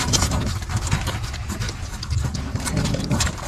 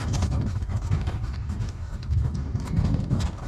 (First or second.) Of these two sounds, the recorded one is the first